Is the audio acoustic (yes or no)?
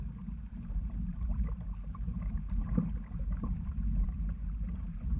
no